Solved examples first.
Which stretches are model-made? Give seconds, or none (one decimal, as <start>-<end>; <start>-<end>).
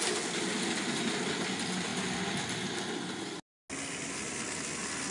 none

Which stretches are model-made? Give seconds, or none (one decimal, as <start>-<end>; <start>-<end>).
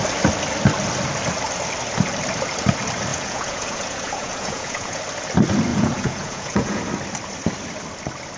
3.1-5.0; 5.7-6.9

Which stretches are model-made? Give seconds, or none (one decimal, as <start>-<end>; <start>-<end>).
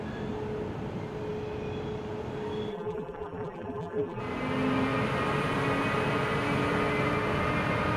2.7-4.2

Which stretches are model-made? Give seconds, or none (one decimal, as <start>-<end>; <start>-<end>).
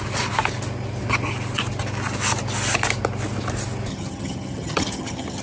3.9-5.4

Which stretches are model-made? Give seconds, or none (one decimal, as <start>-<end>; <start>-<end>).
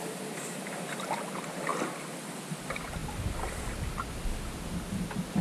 none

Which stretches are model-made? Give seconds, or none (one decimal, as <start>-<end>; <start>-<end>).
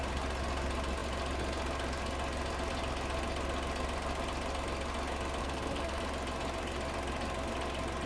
5.4-6.0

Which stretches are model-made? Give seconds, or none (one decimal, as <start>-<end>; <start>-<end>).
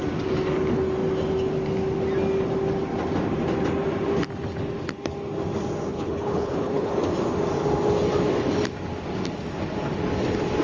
5.9-6.9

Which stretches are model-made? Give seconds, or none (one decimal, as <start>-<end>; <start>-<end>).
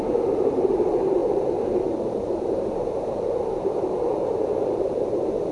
0.0-5.5